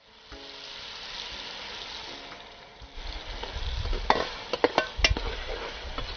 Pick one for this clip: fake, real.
real